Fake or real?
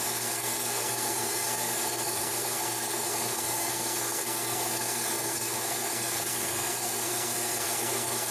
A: fake